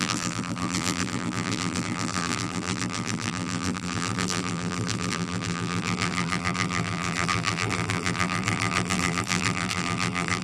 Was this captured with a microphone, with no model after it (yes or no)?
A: no